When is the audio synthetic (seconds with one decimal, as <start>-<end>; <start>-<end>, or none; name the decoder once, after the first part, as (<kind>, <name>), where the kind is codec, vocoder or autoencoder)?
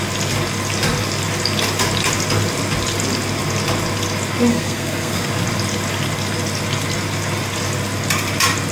4.5-5.3 (codec, SNAC)